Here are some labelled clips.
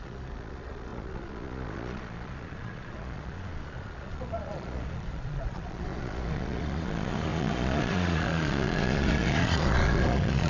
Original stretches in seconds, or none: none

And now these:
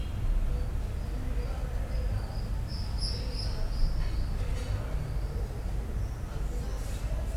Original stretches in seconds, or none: 0.0-7.4

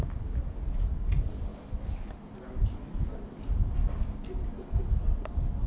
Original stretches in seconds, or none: 0.0-5.7

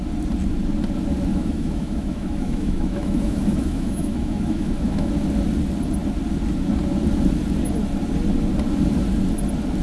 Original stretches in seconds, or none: 0.0-1.3; 5.1-9.8